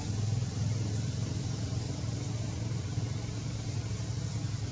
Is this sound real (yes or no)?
yes